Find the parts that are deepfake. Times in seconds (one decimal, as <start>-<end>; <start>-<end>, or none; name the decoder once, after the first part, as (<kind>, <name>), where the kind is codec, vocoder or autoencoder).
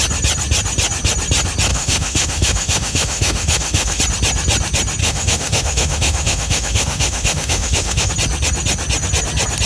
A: 1.7-4.0 (autoencoder, DAC-VAE); 5.0-8.1